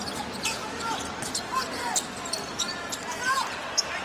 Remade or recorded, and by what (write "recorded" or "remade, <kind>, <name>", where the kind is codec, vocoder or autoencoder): recorded